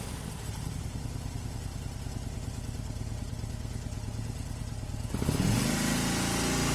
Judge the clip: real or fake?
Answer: real